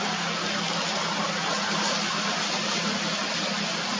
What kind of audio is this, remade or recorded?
recorded